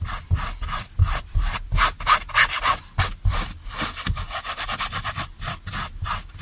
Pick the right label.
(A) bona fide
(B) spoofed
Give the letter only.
A